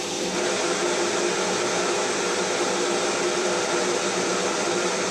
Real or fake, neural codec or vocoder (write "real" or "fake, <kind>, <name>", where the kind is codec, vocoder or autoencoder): fake, vocoder, BigVGAN v2